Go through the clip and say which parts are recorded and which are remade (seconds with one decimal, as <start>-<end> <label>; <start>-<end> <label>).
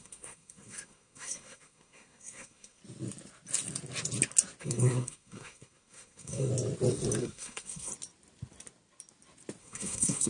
0.0-2.8 remade; 2.8-4.6 recorded; 4.6-6.5 remade; 6.5-7.2 recorded; 7.2-7.9 remade; 7.9-9.6 recorded; 9.6-10.3 remade